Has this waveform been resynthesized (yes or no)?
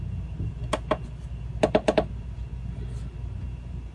no